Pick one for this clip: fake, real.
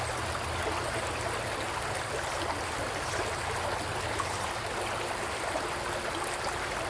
real